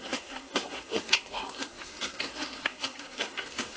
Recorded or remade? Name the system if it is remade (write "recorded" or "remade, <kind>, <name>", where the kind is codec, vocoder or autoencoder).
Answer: remade, codec, SNAC